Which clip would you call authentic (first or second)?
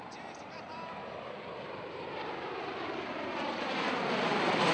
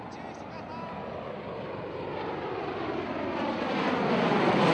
second